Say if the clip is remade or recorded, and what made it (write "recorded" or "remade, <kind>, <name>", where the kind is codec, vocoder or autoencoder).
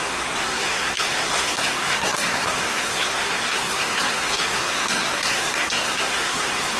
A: remade, codec, SNAC